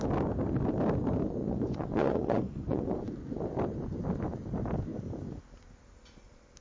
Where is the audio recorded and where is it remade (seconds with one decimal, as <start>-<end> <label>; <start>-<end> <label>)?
0.0-1.4 recorded; 1.4-3.1 remade; 3.1-6.6 recorded